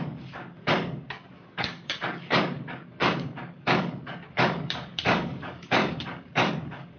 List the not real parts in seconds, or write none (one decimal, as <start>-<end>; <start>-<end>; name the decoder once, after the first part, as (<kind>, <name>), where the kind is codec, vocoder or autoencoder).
0.0-7.0 (codec, DAC)